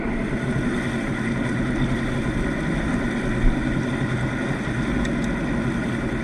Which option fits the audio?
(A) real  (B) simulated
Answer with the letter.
A